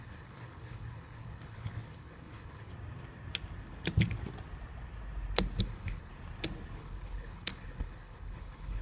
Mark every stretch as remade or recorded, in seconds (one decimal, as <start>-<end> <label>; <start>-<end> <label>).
0.0-2.7 remade; 2.7-5.6 recorded; 5.6-6.1 remade; 6.1-6.8 recorded; 6.8-8.8 remade